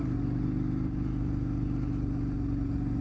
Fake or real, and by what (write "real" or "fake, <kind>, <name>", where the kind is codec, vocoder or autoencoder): real